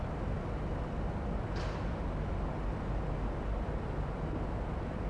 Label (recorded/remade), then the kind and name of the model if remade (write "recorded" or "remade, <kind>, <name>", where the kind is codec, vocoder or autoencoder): recorded